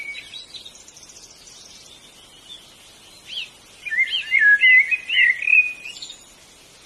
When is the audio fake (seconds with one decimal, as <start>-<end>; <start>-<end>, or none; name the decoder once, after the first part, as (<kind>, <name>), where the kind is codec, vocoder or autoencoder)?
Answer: none